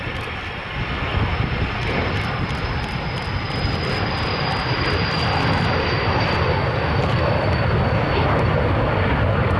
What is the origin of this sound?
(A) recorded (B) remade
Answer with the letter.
A